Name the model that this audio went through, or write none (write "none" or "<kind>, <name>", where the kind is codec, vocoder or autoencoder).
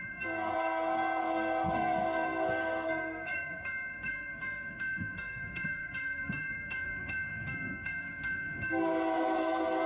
codec, SNAC